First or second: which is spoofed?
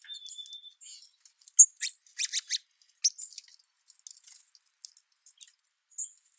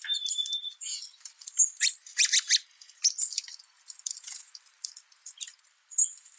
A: second